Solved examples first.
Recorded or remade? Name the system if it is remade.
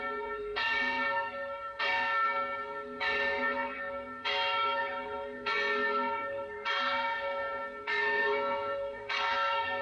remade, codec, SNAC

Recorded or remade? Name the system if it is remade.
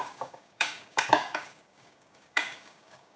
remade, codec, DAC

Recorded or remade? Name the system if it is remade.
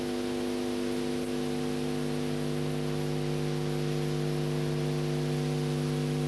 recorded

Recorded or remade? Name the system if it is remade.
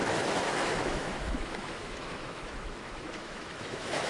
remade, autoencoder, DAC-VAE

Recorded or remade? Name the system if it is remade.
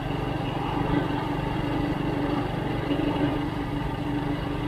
recorded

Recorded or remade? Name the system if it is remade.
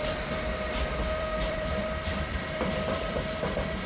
remade, vocoder, BigVGAN v2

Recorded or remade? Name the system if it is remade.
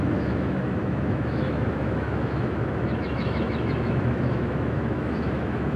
remade, autoencoder, DAC-VAE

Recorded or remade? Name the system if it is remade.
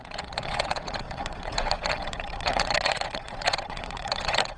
remade, vocoder, WaveNeXt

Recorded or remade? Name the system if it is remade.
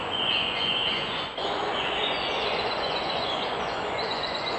remade, vocoder, Vocos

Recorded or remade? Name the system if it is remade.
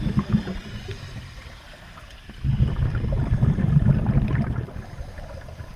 recorded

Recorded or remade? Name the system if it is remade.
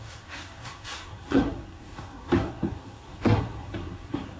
remade, codec, SNAC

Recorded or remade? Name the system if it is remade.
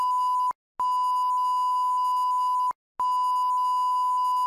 recorded